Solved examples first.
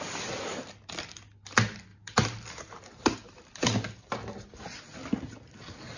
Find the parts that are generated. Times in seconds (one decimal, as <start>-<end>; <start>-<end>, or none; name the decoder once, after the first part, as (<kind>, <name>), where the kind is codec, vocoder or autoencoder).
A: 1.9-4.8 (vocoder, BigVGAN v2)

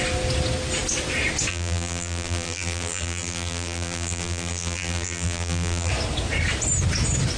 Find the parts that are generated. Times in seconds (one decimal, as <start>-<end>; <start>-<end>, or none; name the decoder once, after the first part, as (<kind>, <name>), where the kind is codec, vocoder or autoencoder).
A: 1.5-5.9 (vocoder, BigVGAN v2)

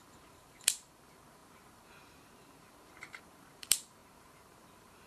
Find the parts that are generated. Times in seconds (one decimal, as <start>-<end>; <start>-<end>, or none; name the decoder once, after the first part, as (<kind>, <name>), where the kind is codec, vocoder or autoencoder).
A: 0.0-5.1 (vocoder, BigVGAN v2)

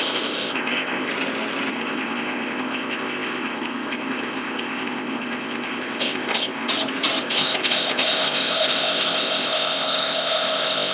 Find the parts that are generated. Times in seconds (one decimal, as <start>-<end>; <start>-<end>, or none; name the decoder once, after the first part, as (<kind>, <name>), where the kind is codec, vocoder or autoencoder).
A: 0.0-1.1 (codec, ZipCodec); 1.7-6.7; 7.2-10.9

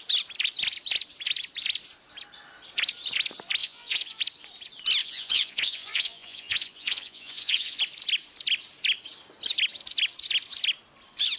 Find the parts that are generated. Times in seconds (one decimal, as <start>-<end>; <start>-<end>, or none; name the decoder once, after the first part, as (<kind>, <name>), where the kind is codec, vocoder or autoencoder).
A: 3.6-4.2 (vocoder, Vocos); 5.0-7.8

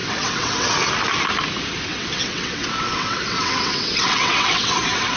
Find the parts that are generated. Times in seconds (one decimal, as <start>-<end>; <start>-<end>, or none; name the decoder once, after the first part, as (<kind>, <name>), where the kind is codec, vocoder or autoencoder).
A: 0.0-0.7 (vocoder, WaveNeXt); 1.9-5.2

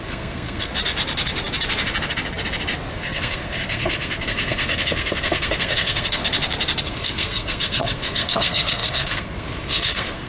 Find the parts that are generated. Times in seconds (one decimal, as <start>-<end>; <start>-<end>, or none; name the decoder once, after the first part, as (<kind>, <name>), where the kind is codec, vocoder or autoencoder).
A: 0.0-0.7 (codec, SNAC); 2.9-6.2; 6.8-10.3

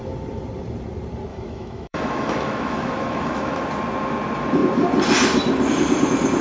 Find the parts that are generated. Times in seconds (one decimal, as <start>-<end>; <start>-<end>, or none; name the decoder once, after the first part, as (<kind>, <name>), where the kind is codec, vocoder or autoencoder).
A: 1.3-3.6 (autoencoder, DAC-VAE)